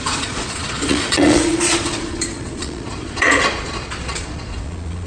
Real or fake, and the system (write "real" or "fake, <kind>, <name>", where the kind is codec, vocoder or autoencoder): fake, vocoder, Vocos